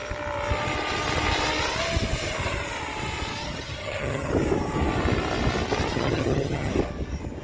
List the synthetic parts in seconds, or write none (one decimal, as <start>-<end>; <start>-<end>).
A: 3.4-4.3; 5.9-6.7